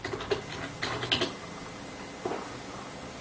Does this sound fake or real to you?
real